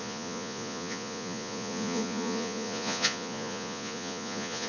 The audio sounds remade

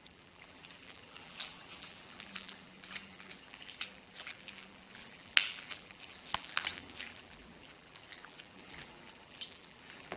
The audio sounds remade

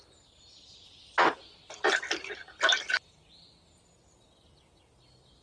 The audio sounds recorded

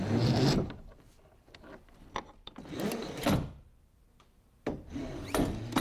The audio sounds recorded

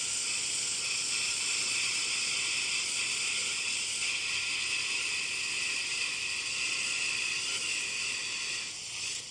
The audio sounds recorded